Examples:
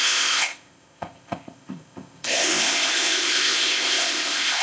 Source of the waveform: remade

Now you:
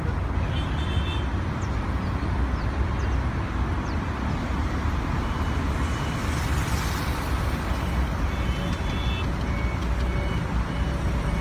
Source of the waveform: recorded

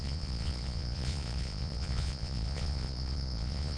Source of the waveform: remade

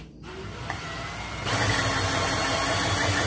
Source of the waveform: recorded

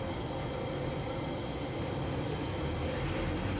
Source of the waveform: recorded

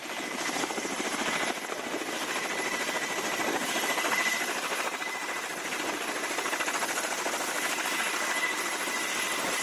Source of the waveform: recorded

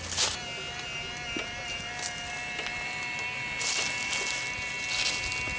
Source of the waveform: recorded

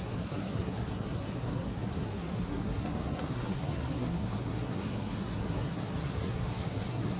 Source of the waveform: remade